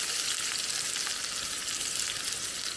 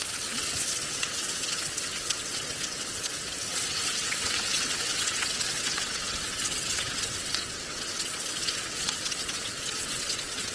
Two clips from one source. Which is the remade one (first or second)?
second